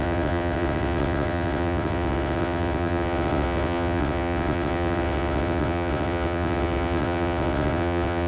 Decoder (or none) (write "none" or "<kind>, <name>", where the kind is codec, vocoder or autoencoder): vocoder, WaveNeXt